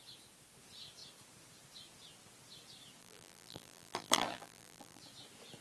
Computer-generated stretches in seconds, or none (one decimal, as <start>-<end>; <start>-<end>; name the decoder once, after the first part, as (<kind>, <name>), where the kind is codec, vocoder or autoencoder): 3.0-5.0 (vocoder, BigVGAN v2)